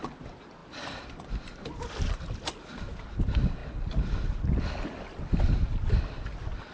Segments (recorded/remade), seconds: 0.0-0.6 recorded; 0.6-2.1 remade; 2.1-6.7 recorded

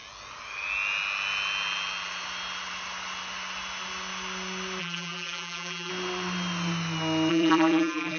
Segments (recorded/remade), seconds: 0.0-4.8 recorded; 4.8-5.9 remade; 5.9-7.3 recorded; 7.3-8.2 remade

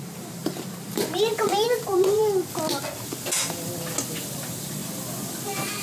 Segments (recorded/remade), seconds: 0.0-2.2 remade; 2.2-4.2 recorded; 4.2-4.8 remade; 4.8-5.8 recorded

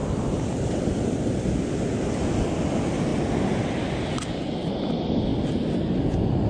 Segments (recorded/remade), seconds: 0.0-5.3 remade; 5.3-5.8 recorded; 5.8-6.5 remade

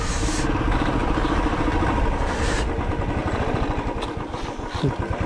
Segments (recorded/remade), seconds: 0.0-1.0 recorded; 1.0-2.5 remade; 2.5-3.2 recorded; 3.2-4.0 remade; 4.0-5.3 recorded

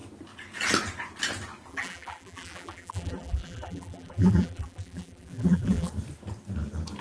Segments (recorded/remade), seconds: 0.0-1.7 recorded; 1.7-5.9 remade; 5.9-7.0 recorded